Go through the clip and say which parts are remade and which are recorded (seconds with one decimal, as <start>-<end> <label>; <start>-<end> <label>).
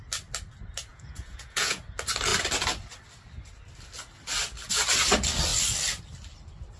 0.0-0.9 recorded; 0.9-1.8 remade; 1.8-6.8 recorded